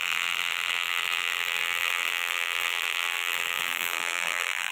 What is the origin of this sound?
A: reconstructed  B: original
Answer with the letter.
A